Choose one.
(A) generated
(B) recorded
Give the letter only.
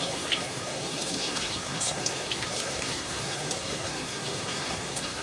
A